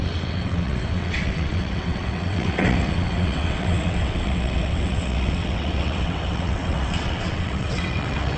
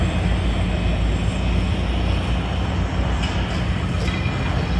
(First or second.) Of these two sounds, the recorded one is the second